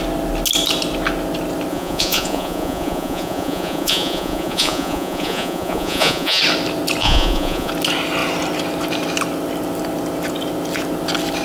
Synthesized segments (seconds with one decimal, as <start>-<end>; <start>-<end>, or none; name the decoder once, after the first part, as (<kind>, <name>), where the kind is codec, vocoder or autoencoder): 1.7-6.4 (vocoder, Vocos); 7.0-7.7